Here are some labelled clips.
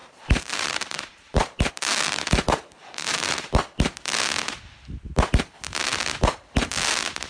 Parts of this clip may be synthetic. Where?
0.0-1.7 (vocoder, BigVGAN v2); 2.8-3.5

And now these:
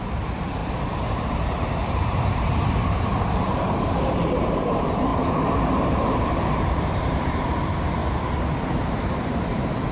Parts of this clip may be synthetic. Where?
0.0-8.0 (vocoder, BigVGAN v2); 8.5-9.9

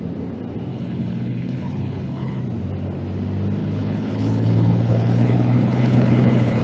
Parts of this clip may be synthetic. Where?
0.7-2.4 (codec, HILCodec); 3.6-6.6

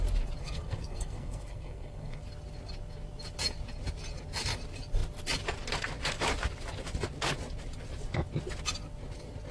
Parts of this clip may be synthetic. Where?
0.4-2.2 (codec, SNAC)

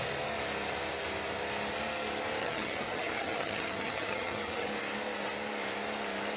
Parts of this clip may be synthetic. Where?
2.4-4.7 (vocoder, HiFi-GAN)

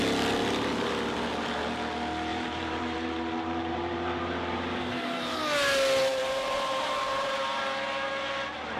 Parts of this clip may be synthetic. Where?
2.3-4.8 (vocoder, BigVGAN v2); 6.1-7.6